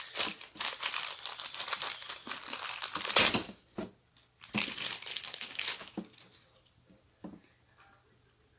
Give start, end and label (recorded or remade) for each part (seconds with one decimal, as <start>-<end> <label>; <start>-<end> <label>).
0.0-5.1 recorded; 5.1-5.8 remade; 5.8-8.6 recorded